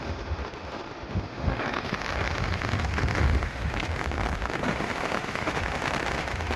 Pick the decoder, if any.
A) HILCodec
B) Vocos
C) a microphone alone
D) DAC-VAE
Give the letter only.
D